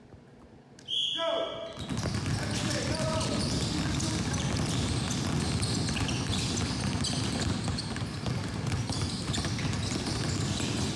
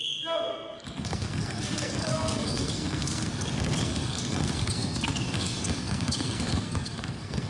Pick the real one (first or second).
first